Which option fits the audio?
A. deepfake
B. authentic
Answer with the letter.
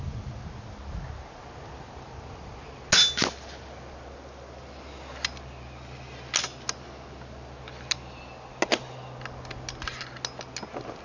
B